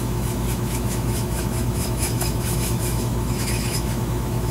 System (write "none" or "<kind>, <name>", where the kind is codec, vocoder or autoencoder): autoencoder, DAC-VAE